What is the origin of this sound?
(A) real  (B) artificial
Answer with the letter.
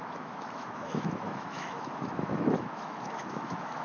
B